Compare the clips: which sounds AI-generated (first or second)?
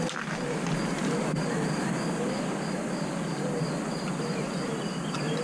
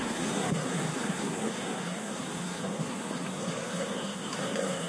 second